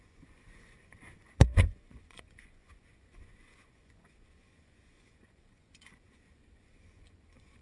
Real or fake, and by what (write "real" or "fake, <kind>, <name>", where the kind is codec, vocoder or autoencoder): fake, vocoder, Vocos